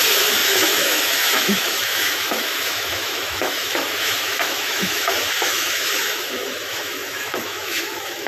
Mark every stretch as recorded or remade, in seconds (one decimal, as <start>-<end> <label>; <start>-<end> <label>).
0.0-8.3 remade